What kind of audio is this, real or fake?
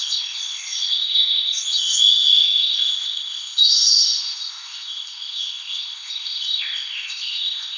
fake